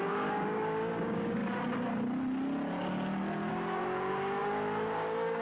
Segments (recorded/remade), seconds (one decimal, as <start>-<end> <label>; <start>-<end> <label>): 0.0-1.4 remade; 1.4-3.5 recorded; 3.5-5.4 remade

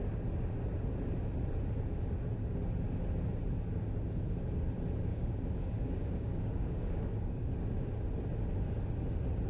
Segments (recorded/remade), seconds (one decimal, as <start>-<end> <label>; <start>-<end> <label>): 0.0-5.1 recorded; 5.1-7.5 remade; 7.5-9.5 recorded

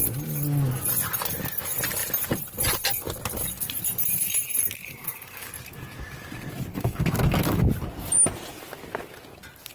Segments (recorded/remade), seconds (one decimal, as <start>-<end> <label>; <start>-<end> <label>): 0.0-4.8 recorded; 4.8-5.5 remade; 5.5-6.7 recorded; 6.7-7.7 remade; 7.7-9.7 recorded

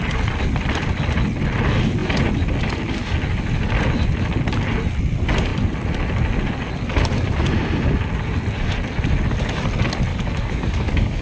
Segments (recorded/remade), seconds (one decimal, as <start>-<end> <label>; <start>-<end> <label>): 0.0-10.1 recorded; 10.1-11.2 remade

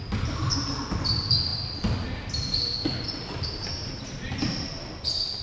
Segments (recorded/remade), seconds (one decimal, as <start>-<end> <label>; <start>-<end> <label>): 0.0-5.4 recorded

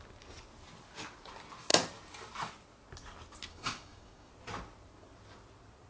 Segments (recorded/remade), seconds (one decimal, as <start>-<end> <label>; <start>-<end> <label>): 0.0-3.5 recorded; 3.5-4.3 remade; 4.3-5.9 recorded